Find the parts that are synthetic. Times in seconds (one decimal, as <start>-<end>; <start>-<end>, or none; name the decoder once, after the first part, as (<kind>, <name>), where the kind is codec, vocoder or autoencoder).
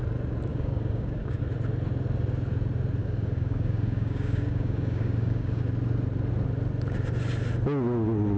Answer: 0.5-1.4 (codec, DAC); 3.0-5.6